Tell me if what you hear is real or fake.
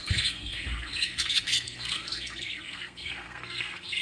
fake